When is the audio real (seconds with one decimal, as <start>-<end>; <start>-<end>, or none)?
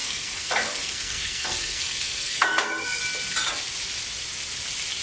3.0-5.0